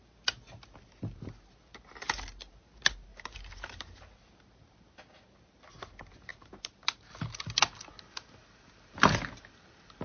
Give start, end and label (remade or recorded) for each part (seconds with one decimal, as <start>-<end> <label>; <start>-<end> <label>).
0.0-10.0 recorded